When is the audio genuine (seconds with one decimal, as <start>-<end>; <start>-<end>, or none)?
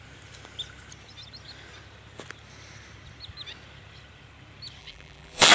0.0-4.8